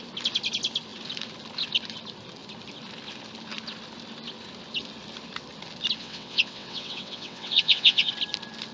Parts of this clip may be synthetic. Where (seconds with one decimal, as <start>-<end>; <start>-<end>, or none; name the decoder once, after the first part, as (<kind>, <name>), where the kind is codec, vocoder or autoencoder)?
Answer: 6.0-8.1 (vocoder, WaveNeXt)